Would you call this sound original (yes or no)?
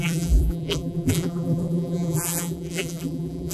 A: no